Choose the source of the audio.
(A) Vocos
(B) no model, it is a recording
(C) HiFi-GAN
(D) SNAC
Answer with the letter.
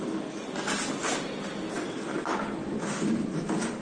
B